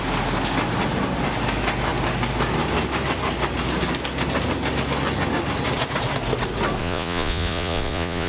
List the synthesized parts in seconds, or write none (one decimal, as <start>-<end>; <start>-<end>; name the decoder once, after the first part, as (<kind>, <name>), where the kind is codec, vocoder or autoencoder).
6.8-8.3 (vocoder, Vocos)